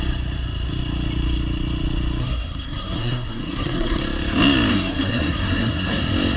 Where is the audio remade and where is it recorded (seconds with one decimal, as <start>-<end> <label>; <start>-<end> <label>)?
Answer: 0.0-2.2 recorded; 2.2-4.0 remade; 4.0-4.7 recorded; 4.7-6.0 remade; 6.0-6.4 recorded